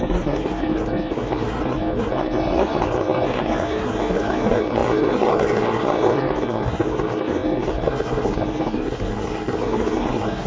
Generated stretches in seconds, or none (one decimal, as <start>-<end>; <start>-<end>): 0.0-10.5